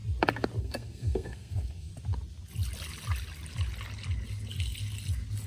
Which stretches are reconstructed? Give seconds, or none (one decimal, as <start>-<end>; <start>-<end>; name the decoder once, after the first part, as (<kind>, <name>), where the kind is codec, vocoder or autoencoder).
0.6-1.9 (codec, SNAC)